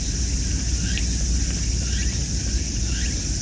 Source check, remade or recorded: recorded